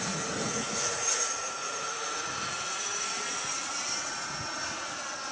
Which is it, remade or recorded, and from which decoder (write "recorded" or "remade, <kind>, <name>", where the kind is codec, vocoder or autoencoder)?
remade, vocoder, Vocos